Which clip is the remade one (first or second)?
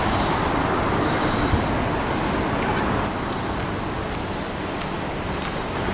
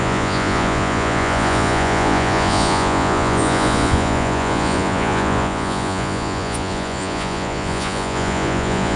second